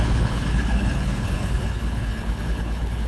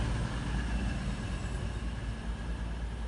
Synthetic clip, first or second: first